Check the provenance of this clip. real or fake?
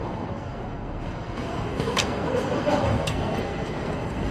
fake